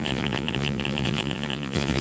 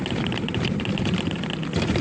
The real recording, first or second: second